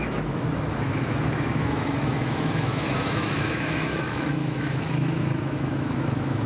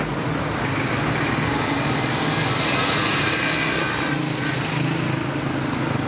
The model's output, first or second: first